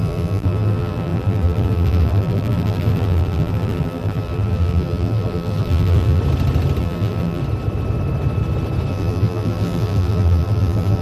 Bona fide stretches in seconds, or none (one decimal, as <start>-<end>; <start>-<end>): 6.2-6.8; 7.4-8.9